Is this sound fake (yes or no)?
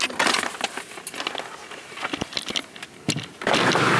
no